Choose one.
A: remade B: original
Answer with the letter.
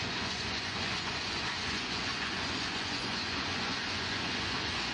A